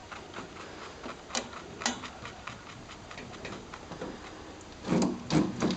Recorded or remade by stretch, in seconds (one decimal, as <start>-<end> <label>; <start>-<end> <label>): 0.0-5.8 recorded